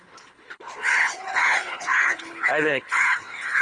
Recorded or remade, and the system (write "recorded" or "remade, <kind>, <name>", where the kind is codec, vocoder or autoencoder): remade, codec, HILCodec